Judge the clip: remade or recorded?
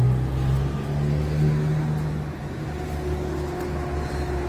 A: recorded